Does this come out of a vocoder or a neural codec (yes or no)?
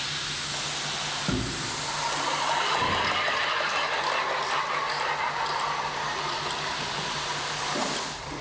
no